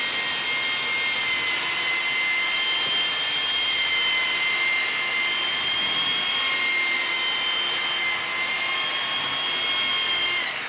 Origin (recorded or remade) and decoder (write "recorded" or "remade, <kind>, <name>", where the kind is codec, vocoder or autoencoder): recorded